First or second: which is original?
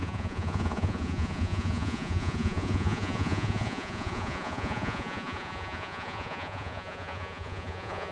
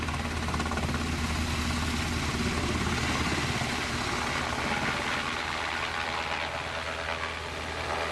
second